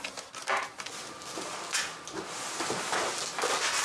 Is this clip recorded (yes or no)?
yes